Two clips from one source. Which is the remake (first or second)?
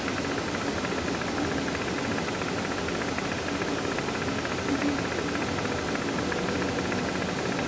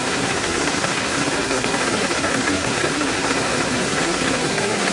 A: second